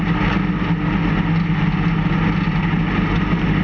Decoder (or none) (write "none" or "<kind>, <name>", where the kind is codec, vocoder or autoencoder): none